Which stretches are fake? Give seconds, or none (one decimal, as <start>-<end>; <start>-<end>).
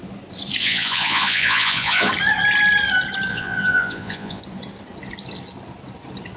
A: 0.6-2.1; 3.3-4.4